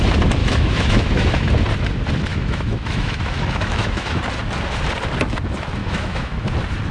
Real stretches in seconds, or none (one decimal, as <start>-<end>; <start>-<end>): 0.0-0.4; 1.5-2.3; 4.2-5.8; 6.5-6.9

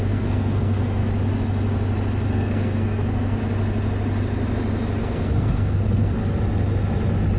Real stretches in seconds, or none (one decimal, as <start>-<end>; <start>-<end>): 1.0-2.3; 3.4-5.0; 6.2-7.4

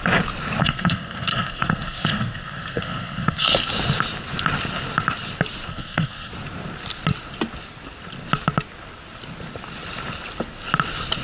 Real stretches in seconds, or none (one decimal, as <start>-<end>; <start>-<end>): 0.0-0.6; 3.7-5.7; 6.3-11.2

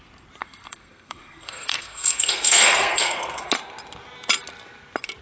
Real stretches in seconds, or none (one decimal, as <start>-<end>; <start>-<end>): 0.0-0.4; 3.5-5.2

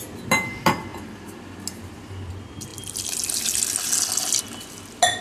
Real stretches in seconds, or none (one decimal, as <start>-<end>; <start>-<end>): 0.0-5.2

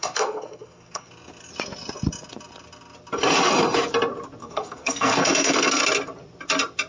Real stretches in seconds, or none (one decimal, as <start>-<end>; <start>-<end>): 1.1-4.4; 5.8-6.9

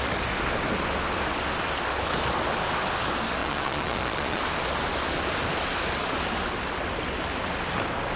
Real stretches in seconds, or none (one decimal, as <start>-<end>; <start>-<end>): 0.0-3.4; 4.4-8.2

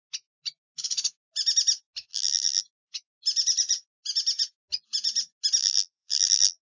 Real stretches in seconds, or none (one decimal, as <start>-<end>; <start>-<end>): 0.0-2.1; 2.6-5.6